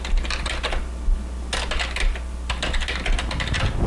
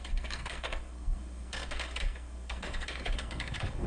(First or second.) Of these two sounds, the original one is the first